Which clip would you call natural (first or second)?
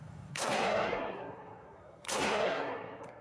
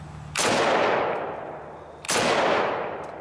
second